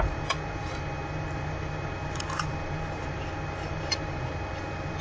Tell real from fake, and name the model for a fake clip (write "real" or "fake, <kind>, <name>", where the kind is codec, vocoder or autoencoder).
fake, vocoder, BigVGAN v2